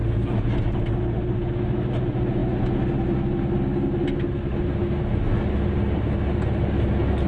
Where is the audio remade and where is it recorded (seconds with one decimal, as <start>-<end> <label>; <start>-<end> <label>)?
0.0-7.3 recorded